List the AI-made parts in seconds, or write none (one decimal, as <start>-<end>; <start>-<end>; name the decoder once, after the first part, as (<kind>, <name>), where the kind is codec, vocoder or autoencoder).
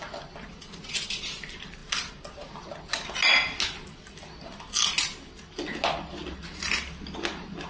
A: none